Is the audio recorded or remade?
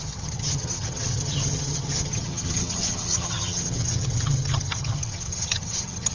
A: remade